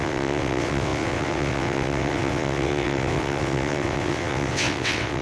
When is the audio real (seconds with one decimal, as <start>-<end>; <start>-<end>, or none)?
none